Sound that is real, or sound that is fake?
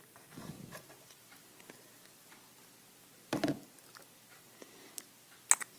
real